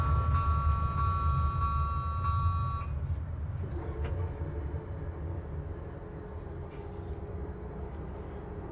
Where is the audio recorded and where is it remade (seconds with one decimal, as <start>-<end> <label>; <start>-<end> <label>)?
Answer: 0.0-8.7 recorded